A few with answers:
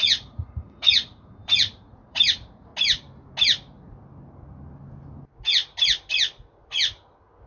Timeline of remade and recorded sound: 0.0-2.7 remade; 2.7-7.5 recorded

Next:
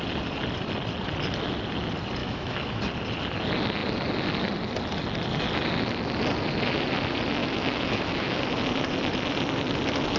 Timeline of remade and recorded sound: 0.0-2.2 recorded; 2.2-2.8 remade; 2.8-7.4 recorded; 7.4-8.4 remade; 8.4-10.2 recorded